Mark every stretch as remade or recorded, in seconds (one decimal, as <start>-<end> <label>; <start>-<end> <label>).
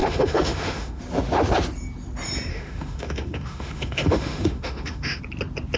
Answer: 0.0-1.0 remade; 1.0-2.5 recorded; 2.5-5.2 remade; 5.2-5.8 recorded